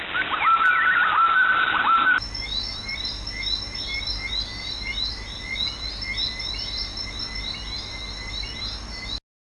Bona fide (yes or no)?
yes